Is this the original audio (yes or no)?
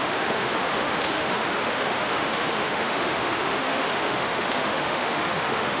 no